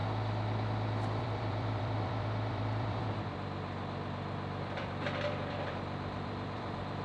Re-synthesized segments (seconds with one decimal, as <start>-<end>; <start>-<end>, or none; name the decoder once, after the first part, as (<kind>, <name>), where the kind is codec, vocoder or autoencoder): 1.2-7.0 (vocoder, BigVGAN v2)